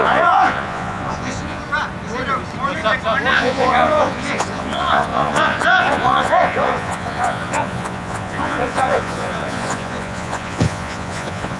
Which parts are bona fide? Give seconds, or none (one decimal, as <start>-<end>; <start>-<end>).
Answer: 1.6-3.3